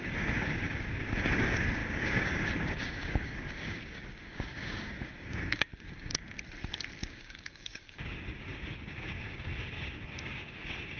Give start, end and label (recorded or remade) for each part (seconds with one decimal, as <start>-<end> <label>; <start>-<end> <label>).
0.0-6.1 remade; 6.1-7.0 recorded; 7.0-11.0 remade